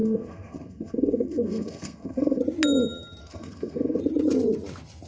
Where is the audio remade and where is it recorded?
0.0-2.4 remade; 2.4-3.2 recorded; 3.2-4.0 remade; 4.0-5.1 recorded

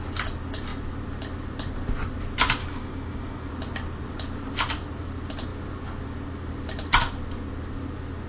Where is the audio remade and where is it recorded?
0.0-2.6 recorded; 2.6-3.5 remade; 3.5-8.3 recorded

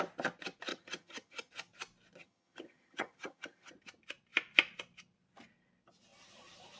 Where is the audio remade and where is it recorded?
0.0-0.7 recorded; 0.7-1.5 remade; 1.5-2.2 recorded; 2.2-3.7 remade; 3.7-6.8 recorded

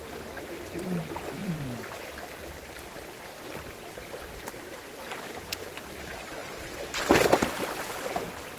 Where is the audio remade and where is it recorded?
0.0-1.4 recorded; 1.4-4.3 remade; 4.3-6.4 recorded; 6.4-7.0 remade; 7.0-8.6 recorded